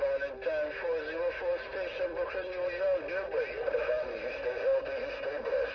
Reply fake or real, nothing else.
real